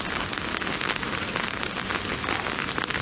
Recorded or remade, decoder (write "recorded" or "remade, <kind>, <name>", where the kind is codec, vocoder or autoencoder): recorded